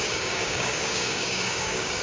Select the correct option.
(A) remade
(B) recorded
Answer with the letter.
A